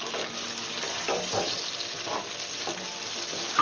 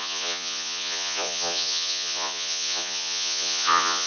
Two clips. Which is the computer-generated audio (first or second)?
second